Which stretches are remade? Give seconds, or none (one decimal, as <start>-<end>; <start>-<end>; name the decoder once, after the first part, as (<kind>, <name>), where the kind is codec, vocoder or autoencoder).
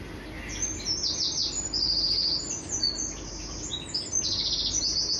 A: none